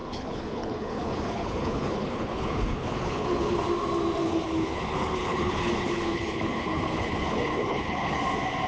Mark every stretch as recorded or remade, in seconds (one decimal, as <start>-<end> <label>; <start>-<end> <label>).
0.0-3.6 remade; 3.6-4.2 recorded; 4.2-8.2 remade; 8.2-8.7 recorded